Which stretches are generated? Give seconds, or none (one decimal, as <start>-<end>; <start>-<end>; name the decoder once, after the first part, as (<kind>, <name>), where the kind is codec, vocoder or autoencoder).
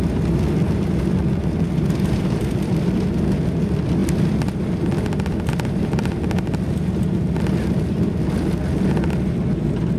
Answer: none